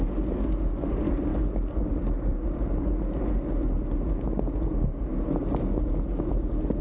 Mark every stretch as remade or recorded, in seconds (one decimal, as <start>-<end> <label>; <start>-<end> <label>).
0.0-6.8 recorded